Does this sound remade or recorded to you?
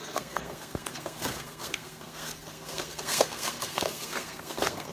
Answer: remade